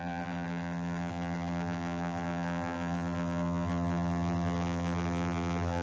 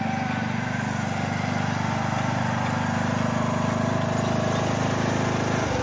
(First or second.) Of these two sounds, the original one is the second